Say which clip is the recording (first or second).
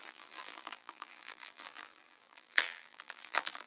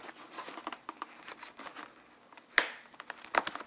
second